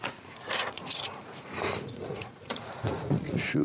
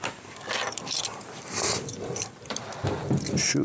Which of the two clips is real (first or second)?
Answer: second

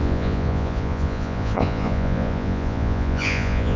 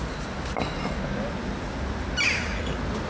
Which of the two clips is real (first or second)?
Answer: second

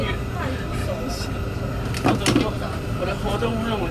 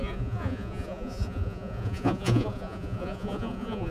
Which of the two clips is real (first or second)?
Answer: first